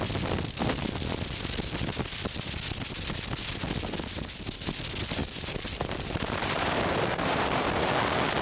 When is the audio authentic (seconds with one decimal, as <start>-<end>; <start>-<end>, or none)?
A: 0.0-5.2; 7.7-8.4